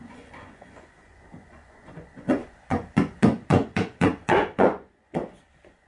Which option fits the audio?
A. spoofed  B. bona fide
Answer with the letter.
A